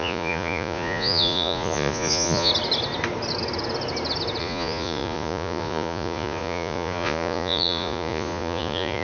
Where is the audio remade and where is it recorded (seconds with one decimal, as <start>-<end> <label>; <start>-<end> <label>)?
0.0-2.5 remade; 2.5-4.4 recorded; 4.4-9.0 remade